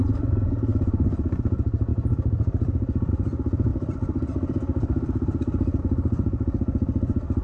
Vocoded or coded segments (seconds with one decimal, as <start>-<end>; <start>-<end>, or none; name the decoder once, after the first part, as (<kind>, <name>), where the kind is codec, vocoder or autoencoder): none